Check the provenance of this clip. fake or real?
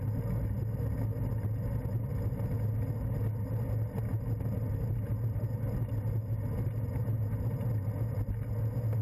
real